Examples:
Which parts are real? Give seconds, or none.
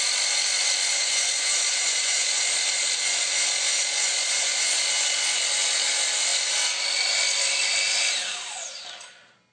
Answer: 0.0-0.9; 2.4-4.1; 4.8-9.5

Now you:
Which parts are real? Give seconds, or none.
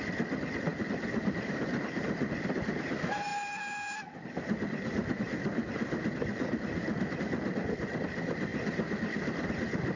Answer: 0.0-10.0